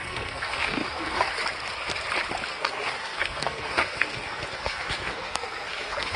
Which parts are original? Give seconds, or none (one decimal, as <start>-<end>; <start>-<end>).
1.3-2.5